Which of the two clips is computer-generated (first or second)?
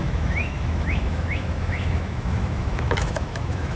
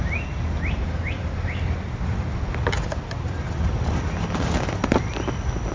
first